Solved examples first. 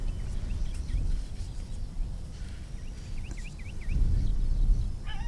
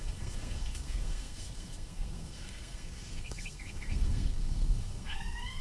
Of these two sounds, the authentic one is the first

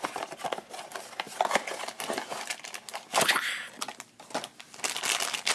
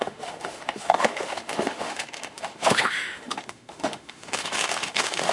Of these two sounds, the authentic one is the first